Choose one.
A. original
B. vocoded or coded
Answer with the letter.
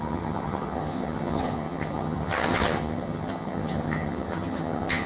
B